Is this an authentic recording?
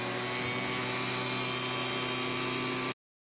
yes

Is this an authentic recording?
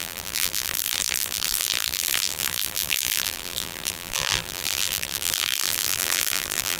no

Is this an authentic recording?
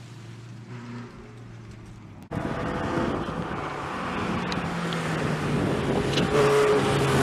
yes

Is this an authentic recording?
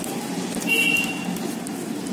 yes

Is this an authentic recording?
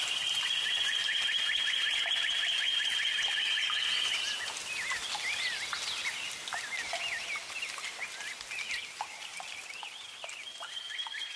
no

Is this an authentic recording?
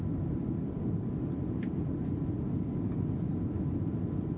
no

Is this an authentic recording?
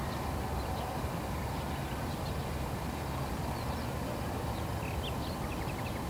yes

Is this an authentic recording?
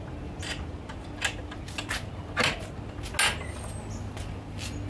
yes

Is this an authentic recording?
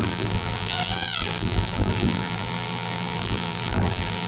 no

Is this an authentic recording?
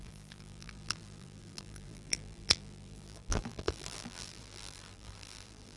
no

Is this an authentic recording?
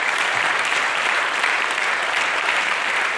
no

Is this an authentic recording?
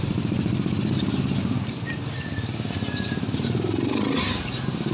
yes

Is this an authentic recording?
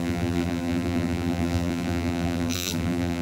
no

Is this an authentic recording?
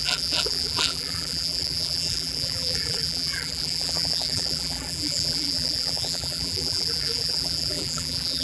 no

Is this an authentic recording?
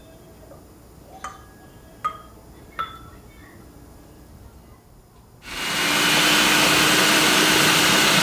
yes